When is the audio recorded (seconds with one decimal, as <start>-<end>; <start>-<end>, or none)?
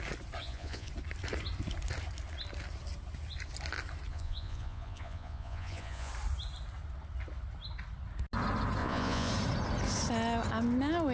0.0-0.4; 0.9-4.1; 6.1-8.8; 9.3-11.1